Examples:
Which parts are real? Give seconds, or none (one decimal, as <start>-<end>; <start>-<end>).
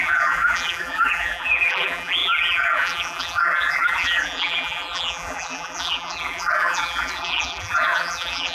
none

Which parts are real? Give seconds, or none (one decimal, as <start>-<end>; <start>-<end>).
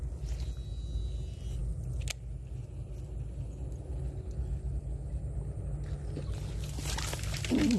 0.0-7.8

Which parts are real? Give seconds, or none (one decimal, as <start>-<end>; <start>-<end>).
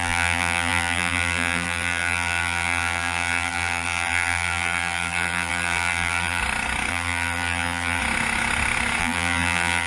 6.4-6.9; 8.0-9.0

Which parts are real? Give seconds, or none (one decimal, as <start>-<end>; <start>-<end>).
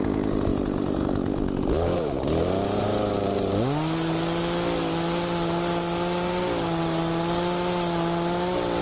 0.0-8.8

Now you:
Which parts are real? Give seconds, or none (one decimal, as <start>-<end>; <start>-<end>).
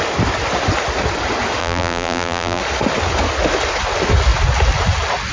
0.0-1.6; 2.6-5.3